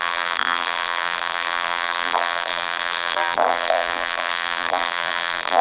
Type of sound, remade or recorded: remade